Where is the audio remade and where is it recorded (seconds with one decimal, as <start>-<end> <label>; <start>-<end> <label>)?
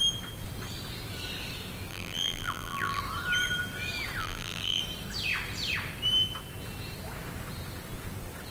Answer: 0.0-1.9 recorded; 1.9-3.0 remade; 3.0-4.2 recorded; 4.2-4.8 remade; 4.8-8.5 recorded